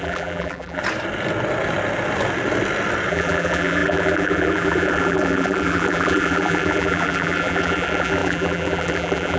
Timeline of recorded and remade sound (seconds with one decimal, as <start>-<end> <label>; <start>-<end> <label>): 0.0-0.8 remade; 0.8-3.1 recorded; 3.1-9.4 remade